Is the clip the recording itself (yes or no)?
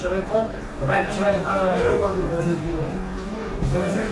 no